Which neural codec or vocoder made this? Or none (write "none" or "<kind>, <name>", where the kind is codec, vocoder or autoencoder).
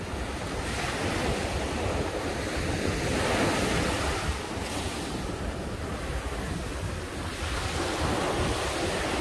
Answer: none